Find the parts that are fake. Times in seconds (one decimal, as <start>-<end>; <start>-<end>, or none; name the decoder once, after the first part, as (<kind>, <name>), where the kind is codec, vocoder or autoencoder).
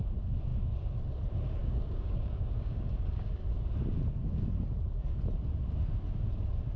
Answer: 1.6-3.4 (codec, DAC)